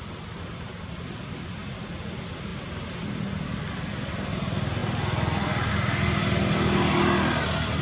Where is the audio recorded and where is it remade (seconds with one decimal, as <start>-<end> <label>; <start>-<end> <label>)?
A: 0.0-7.8 recorded